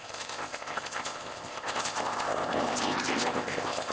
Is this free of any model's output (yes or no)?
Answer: no